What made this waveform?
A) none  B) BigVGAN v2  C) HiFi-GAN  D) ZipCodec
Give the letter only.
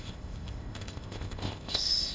D